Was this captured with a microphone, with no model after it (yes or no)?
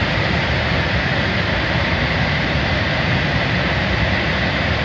no